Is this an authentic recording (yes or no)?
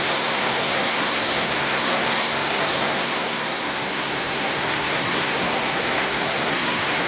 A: no